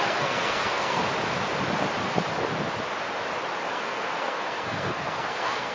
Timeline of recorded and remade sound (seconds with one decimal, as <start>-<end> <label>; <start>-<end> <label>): 0.0-1.0 remade; 1.0-3.7 recorded; 3.7-5.7 remade